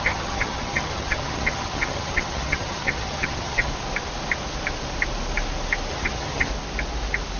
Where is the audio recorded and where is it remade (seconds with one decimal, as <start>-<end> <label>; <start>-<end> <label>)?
0.0-3.7 remade; 3.7-5.9 recorded; 5.9-6.5 remade; 6.5-7.4 recorded